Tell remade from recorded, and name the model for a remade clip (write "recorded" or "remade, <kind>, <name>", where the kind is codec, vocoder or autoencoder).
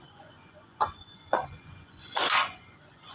remade, vocoder, Vocos